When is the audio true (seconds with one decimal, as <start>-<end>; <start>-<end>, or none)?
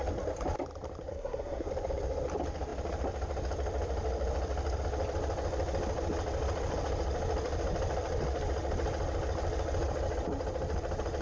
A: 0.0-1.1; 1.7-11.2